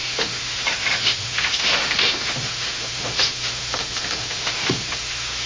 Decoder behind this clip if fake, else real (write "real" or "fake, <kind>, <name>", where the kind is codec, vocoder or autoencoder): fake, autoencoder, DAC-VAE